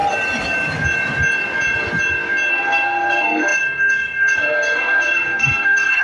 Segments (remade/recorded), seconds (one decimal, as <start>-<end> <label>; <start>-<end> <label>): 0.0-2.5 recorded; 2.5-6.0 remade